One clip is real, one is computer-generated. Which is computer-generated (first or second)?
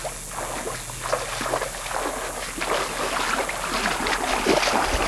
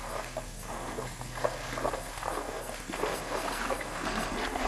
second